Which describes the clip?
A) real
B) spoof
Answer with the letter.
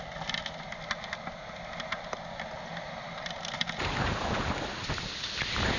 A